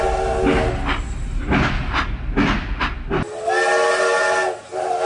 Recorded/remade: recorded